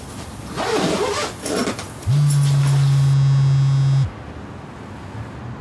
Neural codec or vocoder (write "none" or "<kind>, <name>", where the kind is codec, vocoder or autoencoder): none